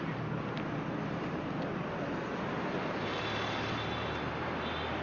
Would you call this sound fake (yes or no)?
no